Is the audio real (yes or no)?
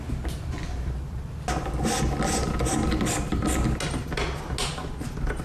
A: yes